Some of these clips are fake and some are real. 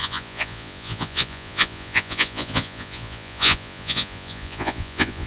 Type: fake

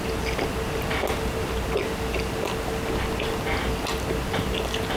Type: real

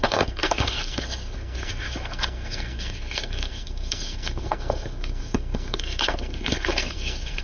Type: fake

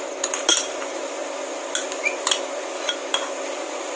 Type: real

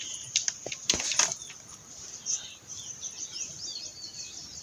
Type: real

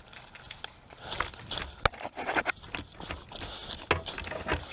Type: real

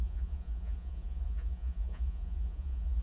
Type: fake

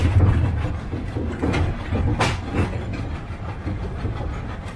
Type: real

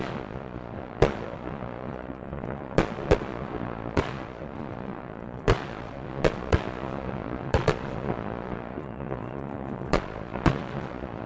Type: fake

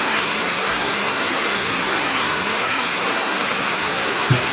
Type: fake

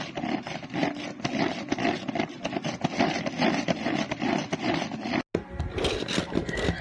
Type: real